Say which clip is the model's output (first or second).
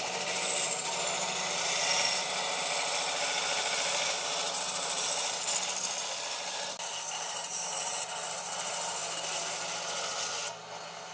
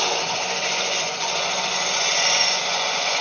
second